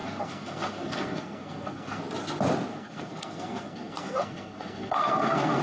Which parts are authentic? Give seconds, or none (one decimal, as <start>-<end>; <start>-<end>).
2.0-2.7